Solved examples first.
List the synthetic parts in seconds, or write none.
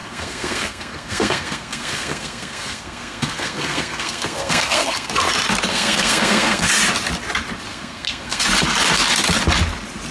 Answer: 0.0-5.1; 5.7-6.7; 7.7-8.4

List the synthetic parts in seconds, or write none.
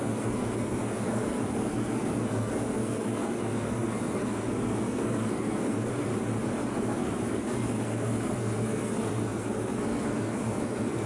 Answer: 0.0-6.1; 6.6-11.1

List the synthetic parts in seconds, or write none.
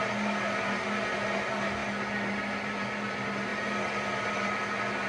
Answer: none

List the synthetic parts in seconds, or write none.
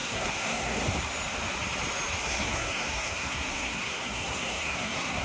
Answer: 0.0-0.8; 2.2-5.2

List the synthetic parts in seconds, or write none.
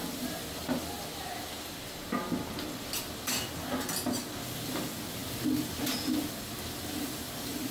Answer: none